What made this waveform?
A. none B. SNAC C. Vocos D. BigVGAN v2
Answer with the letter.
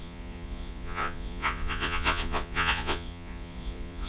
C